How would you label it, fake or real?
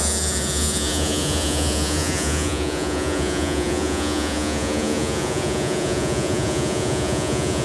fake